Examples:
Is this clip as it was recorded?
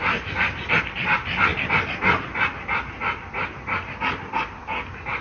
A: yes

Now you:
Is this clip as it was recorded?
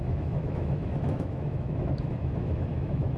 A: no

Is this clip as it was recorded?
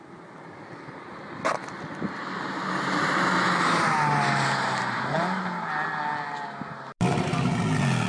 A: yes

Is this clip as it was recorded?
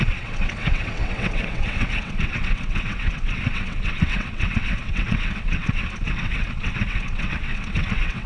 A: no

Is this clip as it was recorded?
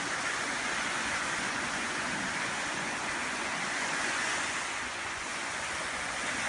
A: no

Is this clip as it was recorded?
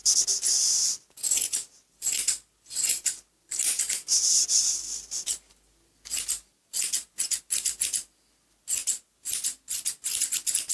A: yes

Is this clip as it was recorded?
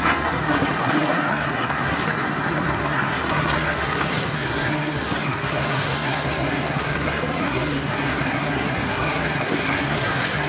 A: no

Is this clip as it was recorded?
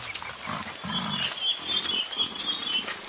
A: yes